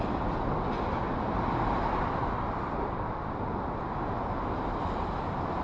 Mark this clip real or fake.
real